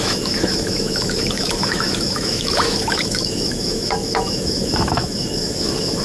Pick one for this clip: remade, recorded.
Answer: remade